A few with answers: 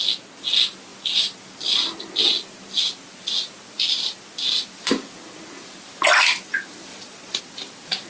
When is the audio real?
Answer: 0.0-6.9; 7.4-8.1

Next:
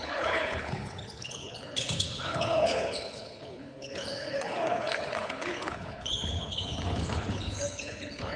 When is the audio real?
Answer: none

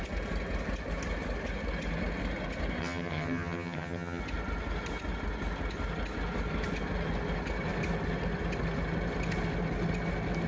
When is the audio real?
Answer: 0.0-2.8; 4.2-10.5

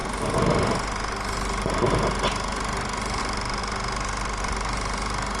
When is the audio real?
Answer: 0.0-5.4

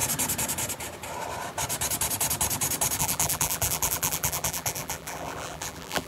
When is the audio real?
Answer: 0.0-3.0

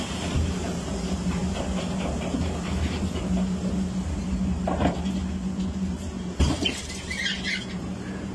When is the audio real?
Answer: 1.4-6.4